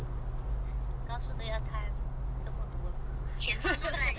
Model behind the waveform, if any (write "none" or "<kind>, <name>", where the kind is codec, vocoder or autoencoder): none